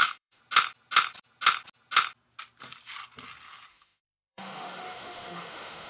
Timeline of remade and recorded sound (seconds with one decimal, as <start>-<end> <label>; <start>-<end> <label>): 0.0-0.4 remade; 0.4-3.7 recorded; 3.7-5.9 remade